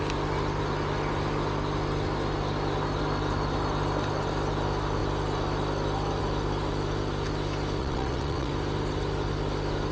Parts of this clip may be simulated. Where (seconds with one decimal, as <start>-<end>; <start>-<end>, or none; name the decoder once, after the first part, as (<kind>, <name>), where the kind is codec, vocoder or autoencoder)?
7.8-8.5 (vocoder, WaveNeXt)